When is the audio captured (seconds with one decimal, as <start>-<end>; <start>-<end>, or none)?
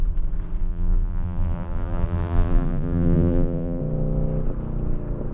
0.0-0.6; 3.8-5.3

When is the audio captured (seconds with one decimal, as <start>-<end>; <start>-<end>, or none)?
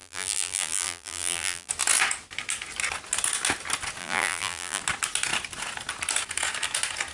1.7-4.0; 4.8-7.1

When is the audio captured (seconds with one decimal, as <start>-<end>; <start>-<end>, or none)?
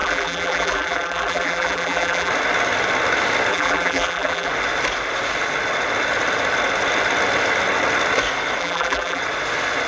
2.3-3.5; 4.5-8.6; 9.2-9.9